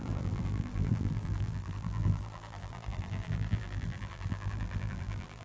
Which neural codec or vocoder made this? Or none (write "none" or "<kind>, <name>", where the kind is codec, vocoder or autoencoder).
vocoder, BigVGAN v2